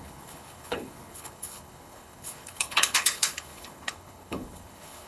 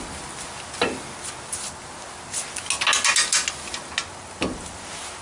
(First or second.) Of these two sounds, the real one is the second